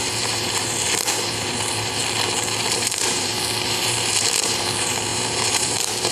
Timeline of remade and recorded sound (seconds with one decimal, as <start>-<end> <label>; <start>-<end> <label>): 0.0-2.0 remade; 2.0-2.6 recorded; 2.6-6.1 remade